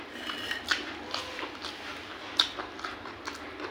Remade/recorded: recorded